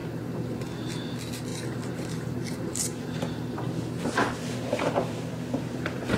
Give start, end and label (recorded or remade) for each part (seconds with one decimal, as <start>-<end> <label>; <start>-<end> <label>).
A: 0.0-0.9 remade; 0.9-1.5 recorded; 1.5-4.0 remade; 4.0-4.7 recorded; 4.7-6.2 remade